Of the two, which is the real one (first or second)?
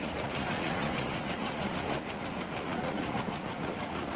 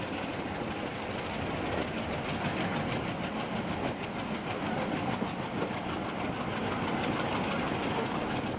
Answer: second